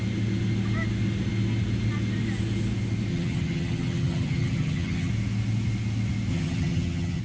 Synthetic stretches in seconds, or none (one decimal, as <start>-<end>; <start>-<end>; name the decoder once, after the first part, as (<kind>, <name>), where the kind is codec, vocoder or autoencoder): 3.1-5.1 (vocoder, HiFi-GAN); 6.3-7.2